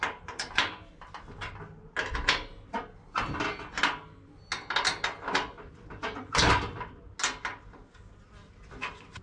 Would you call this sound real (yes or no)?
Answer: yes